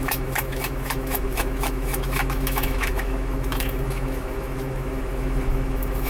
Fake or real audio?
fake